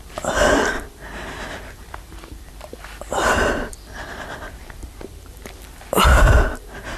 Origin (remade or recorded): remade